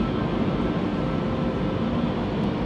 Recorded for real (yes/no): yes